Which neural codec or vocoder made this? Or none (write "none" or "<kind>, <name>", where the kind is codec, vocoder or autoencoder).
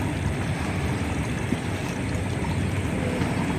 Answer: none